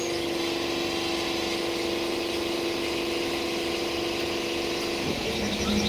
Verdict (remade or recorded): recorded